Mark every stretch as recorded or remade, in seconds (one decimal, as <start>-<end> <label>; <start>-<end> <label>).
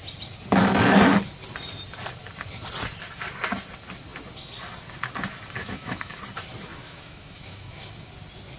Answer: 0.0-5.6 recorded; 5.6-6.2 remade; 6.2-6.7 recorded; 6.7-8.1 remade; 8.1-8.6 recorded